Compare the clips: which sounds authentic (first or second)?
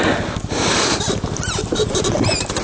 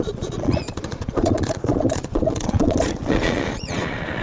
first